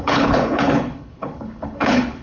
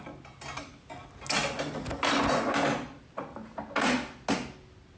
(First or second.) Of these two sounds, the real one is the second